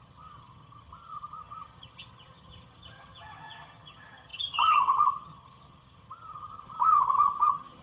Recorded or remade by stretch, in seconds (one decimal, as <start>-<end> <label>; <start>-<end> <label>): 0.0-7.8 remade